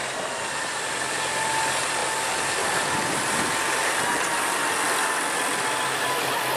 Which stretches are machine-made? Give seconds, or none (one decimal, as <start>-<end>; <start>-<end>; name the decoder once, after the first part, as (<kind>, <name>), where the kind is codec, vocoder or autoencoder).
none